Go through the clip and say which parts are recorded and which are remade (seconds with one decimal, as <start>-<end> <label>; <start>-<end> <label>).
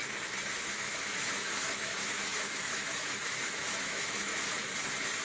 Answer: 0.0-0.6 recorded; 0.6-4.3 remade; 4.3-5.2 recorded